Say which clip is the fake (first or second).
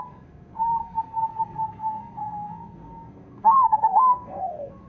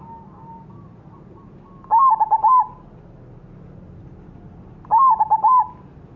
first